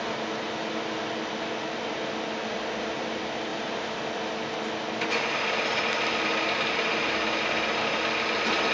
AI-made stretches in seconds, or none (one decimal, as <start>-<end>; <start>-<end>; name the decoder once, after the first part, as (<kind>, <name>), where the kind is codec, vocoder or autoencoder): 3.5-4.0 (vocoder, BigVGAN v2)